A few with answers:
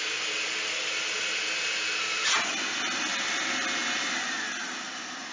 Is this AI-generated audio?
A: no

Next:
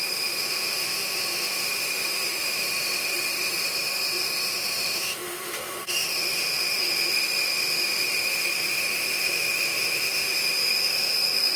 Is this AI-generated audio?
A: yes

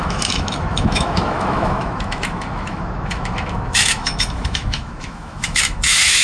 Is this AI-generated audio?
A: yes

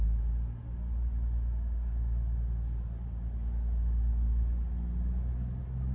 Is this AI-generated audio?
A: no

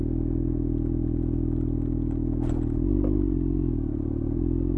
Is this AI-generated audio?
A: no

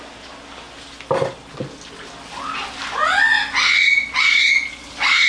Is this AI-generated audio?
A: no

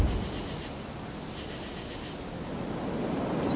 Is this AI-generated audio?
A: no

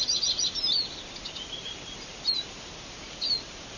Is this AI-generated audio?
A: no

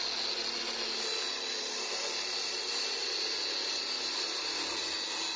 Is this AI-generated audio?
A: no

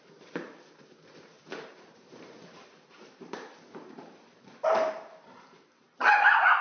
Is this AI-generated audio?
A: yes